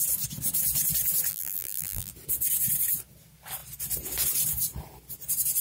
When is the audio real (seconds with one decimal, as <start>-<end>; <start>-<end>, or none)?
0.0-1.3; 2.1-5.6